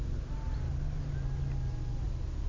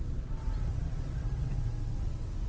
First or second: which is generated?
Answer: second